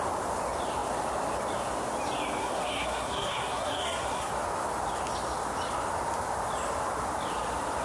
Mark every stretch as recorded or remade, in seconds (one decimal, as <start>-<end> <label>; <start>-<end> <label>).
0.0-2.4 recorded; 2.4-4.3 remade; 4.3-7.8 recorded